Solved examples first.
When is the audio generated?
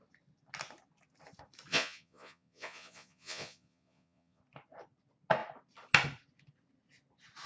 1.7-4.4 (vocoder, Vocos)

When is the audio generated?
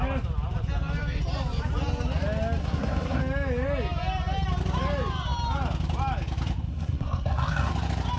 2.6-3.2 (codec, SNAC); 6.7-7.7